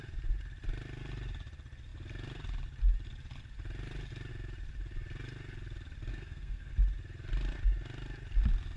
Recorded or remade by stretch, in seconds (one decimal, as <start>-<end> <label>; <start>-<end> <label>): 0.0-6.1 recorded; 6.1-6.7 remade; 6.7-8.8 recorded